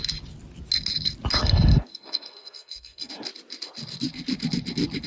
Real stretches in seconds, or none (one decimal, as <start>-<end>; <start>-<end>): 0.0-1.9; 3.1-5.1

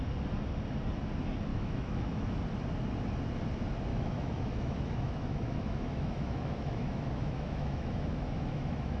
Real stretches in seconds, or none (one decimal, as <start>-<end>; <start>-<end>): 0.0-1.5; 2.3-3.9

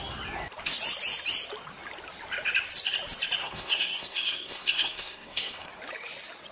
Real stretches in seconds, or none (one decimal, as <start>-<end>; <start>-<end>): 0.0-3.4; 5.7-6.5

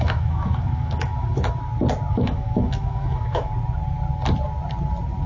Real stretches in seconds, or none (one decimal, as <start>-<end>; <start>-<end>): 1.6-2.1; 3.5-5.3

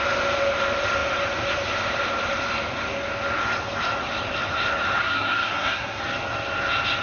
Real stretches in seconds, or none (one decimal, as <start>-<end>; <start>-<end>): 0.0-5.0; 6.0-7.0

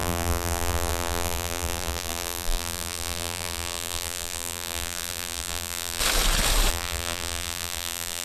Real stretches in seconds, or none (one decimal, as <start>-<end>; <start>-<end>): 6.0-6.7

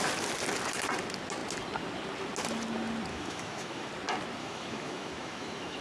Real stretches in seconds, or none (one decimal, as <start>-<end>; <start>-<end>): 0.0-3.1; 3.9-4.4

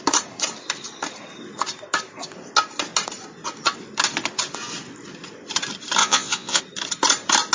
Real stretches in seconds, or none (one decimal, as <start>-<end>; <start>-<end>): 0.0-6.0; 6.6-7.5